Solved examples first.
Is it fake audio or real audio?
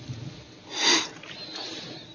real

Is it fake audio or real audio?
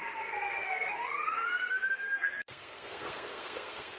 fake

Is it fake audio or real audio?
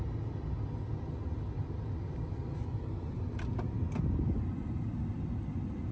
real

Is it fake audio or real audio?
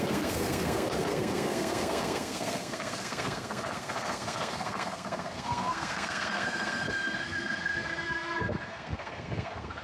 fake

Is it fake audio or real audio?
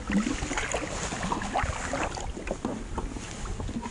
real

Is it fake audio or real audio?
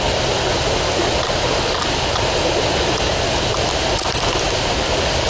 real